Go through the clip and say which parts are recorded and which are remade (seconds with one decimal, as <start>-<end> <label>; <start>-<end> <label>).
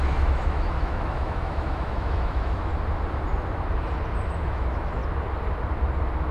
0.0-2.7 remade; 2.7-4.4 recorded; 4.4-5.0 remade; 5.0-6.3 recorded